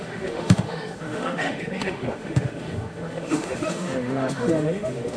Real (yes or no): no